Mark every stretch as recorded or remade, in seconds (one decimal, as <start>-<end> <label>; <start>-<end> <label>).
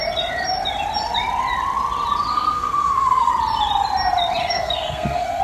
0.0-2.3 recorded; 2.3-3.3 remade; 3.3-4.4 recorded; 4.4-5.4 remade